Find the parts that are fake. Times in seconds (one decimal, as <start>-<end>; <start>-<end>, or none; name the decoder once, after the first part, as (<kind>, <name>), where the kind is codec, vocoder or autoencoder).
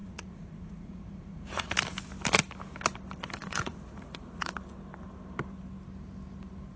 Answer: 0.0-1.7 (vocoder, Vocos); 3.4-4.5